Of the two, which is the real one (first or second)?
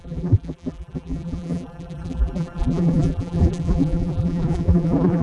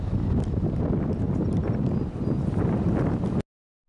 second